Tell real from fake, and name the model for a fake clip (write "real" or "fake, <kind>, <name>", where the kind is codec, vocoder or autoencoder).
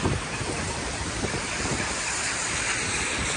real